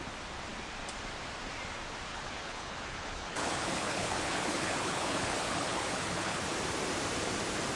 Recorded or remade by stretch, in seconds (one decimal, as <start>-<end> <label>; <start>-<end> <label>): 0.0-2.1 recorded; 2.1-6.4 remade; 6.4-7.7 recorded